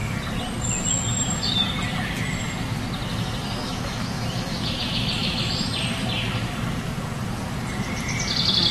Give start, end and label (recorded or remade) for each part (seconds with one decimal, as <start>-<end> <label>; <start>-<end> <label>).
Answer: 0.0-3.1 recorded; 3.1-5.5 remade; 5.5-8.7 recorded